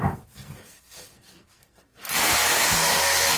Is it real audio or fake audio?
fake